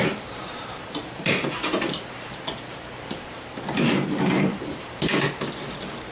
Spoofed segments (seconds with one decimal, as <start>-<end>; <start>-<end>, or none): 0.0-3.4; 4.5-5.1